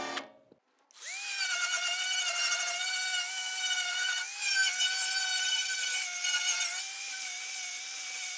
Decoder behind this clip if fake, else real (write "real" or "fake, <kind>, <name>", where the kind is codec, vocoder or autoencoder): real